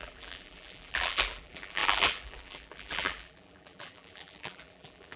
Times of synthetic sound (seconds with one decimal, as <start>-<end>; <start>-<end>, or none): 0.0-5.2